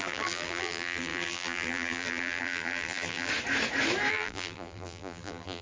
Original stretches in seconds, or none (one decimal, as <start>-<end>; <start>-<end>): 3.3-4.1